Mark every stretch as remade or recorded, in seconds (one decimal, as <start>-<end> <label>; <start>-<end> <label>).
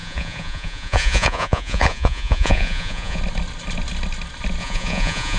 0.0-3.2 remade; 3.2-4.6 recorded; 4.6-5.4 remade